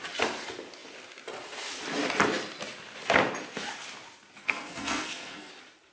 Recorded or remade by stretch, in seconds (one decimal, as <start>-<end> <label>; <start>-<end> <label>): 0.0-4.4 recorded; 4.4-5.5 remade; 5.5-5.9 recorded